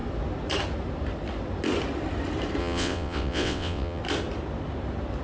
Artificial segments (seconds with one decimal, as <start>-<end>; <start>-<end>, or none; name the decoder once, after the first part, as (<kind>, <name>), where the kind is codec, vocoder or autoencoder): 2.6-4.0 (vocoder, WaveNeXt)

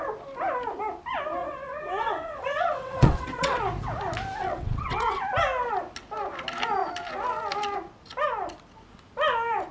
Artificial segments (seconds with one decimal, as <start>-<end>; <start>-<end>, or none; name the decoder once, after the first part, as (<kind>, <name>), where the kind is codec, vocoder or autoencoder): 1.4-3.6 (vocoder, WaveNeXt); 4.4-5.2

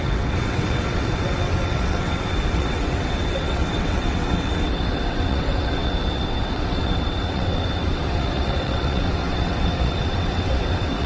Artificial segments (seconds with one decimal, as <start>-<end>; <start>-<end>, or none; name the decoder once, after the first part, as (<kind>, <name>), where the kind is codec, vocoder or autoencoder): 0.0-11.1 (vocoder, WaveNeXt)